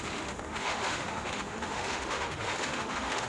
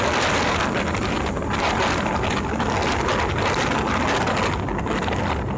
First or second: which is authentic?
second